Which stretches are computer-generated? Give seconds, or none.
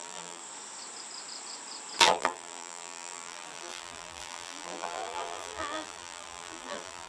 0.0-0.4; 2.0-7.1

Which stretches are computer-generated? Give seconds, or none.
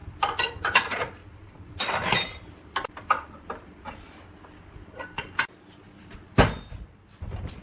0.0-0.6; 1.2-3.9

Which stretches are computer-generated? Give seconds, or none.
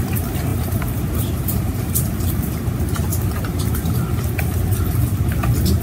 0.5-1.9; 3.1-3.6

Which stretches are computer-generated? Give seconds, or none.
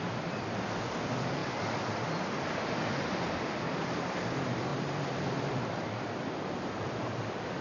0.0-7.6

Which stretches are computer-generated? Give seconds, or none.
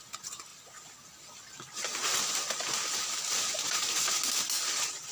none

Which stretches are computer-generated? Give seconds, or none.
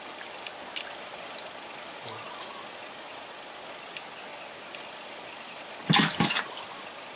4.3-5.7